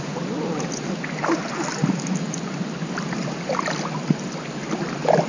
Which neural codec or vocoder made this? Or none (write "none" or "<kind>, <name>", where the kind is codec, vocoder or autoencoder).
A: none